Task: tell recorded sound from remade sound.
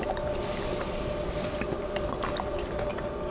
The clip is recorded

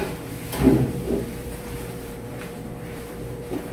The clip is remade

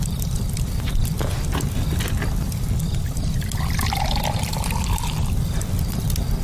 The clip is recorded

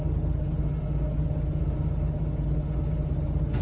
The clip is recorded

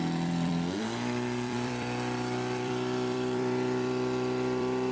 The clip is remade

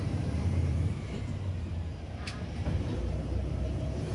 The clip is remade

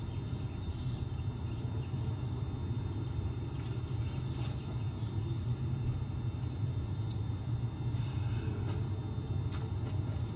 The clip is recorded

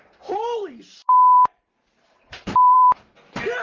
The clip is remade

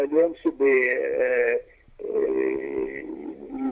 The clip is remade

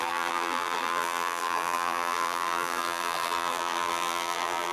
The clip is remade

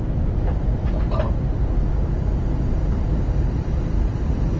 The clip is remade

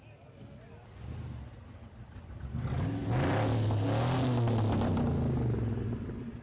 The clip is recorded